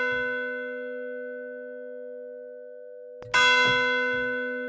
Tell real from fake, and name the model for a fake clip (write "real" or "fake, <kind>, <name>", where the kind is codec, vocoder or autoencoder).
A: real